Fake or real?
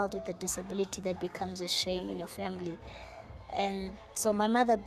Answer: fake